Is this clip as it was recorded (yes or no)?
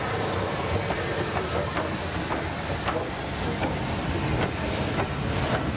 yes